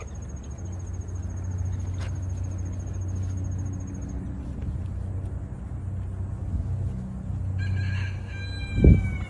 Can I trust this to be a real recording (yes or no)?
yes